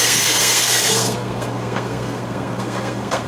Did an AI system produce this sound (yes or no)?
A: yes